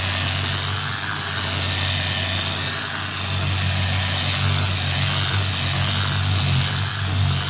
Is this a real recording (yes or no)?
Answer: yes